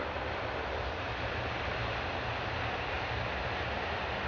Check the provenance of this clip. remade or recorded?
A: recorded